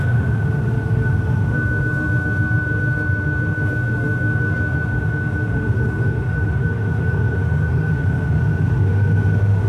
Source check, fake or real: fake